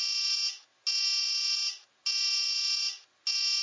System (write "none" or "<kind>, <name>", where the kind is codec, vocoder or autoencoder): none